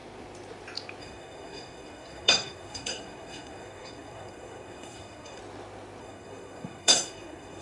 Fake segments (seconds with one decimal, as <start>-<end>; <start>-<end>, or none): 1.0-5.4; 6.0-7.6